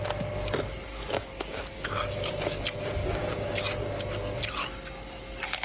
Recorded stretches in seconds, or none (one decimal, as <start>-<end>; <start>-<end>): 0.0-0.9; 2.6-3.0; 3.6-5.6